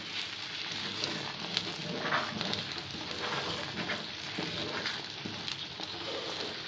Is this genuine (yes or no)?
yes